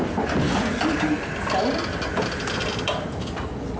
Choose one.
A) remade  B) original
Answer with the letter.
A